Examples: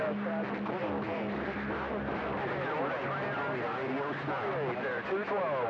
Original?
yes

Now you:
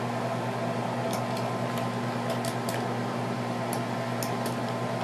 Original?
yes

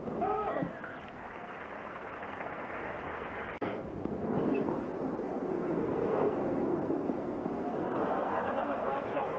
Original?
no